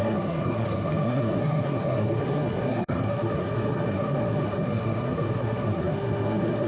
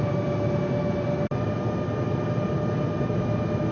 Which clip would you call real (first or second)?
second